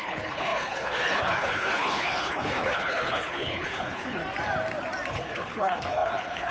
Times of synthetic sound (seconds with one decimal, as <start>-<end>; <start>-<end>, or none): 0.0-4.2; 5.1-6.5